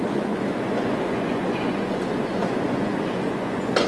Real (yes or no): no